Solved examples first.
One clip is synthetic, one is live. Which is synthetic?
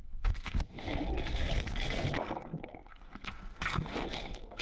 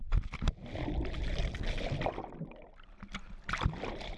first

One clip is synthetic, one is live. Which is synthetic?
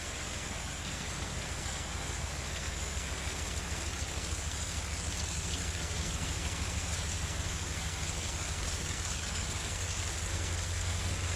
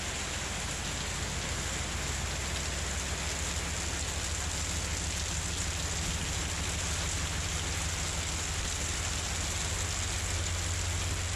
first